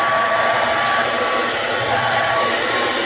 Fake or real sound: real